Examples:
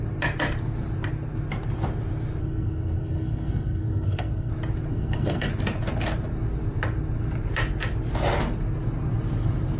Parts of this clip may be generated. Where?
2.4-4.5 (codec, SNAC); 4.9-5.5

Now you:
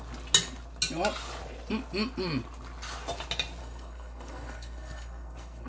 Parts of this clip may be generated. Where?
3.6-5.7 (codec, SNAC)